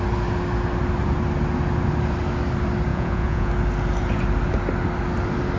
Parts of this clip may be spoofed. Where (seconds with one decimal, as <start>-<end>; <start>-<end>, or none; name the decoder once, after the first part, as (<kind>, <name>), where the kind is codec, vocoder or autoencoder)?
2.9-3.5 (vocoder, Vocos)